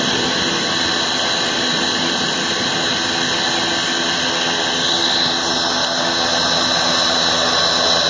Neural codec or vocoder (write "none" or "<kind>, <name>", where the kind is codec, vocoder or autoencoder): none